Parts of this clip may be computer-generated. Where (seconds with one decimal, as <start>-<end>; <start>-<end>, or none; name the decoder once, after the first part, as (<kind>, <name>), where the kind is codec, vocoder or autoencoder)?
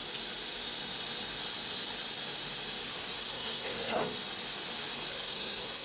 3.3-4.0 (codec, SNAC); 5.1-5.8